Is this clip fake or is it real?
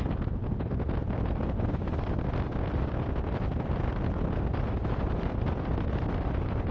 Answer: fake